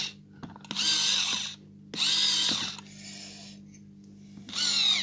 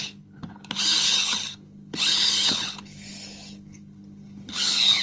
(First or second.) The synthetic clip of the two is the second